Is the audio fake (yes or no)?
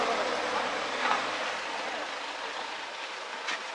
no